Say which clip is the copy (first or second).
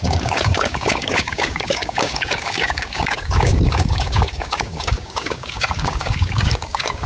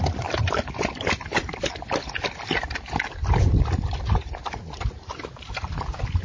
first